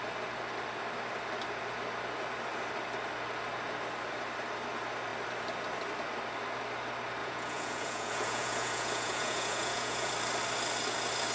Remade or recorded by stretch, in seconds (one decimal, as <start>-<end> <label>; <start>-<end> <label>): 0.0-7.2 recorded; 7.2-10.1 remade; 10.1-11.3 recorded